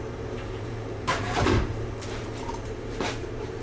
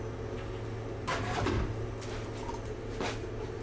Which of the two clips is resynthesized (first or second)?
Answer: first